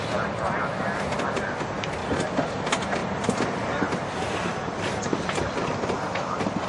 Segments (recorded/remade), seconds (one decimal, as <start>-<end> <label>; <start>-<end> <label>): 0.0-6.7 recorded